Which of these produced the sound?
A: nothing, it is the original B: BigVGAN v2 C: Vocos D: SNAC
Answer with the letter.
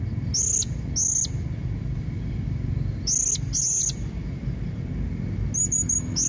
A